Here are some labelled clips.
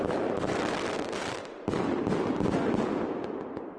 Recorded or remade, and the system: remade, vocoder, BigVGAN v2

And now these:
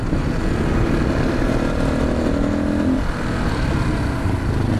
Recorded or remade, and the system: recorded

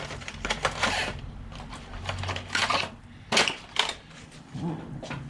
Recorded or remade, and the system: remade, vocoder, BigVGAN v2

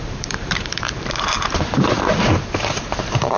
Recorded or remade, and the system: remade, vocoder, BigVGAN v2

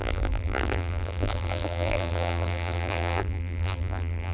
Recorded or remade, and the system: remade, vocoder, BigVGAN v2